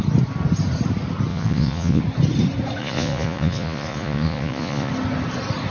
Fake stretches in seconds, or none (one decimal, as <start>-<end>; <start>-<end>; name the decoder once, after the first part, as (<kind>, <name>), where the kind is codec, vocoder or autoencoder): 1.3-2.0 (vocoder, Vocos); 2.8-4.9